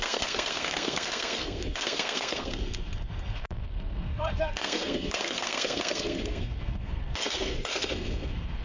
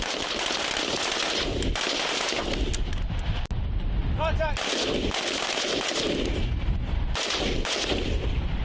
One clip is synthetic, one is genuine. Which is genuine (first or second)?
second